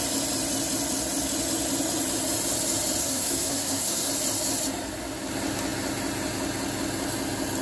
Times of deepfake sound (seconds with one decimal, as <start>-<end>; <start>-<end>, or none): 3.0-4.1